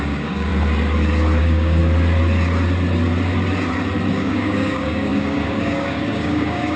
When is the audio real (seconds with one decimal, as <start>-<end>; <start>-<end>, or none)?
0.5-1.4; 1.8-4.1